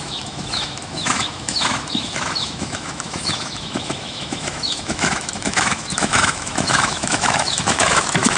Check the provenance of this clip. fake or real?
fake